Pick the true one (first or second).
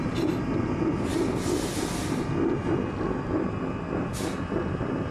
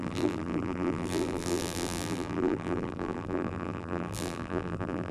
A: first